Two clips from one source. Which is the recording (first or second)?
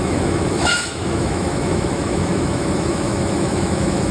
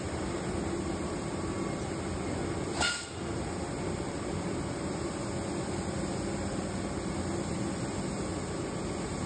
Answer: second